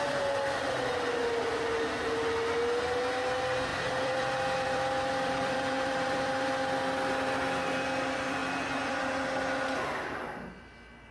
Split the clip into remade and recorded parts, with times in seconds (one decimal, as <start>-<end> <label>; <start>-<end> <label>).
0.0-3.7 recorded; 3.7-6.3 remade; 6.3-8.4 recorded; 8.4-8.9 remade; 8.9-11.1 recorded